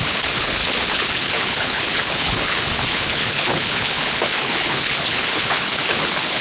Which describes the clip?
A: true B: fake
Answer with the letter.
B